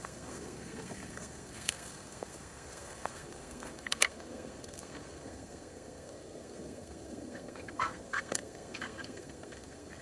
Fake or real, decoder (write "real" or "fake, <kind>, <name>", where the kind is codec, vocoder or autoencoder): fake, codec, SNAC